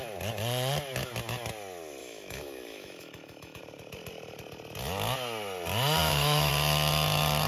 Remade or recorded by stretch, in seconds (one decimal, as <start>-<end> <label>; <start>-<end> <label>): 0.0-2.0 recorded; 2.0-3.6 remade; 3.6-6.0 recorded; 6.0-6.5 remade; 6.5-7.5 recorded